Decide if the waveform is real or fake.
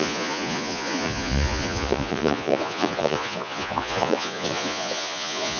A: fake